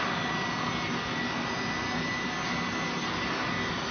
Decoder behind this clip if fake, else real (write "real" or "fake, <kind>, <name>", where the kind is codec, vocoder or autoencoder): real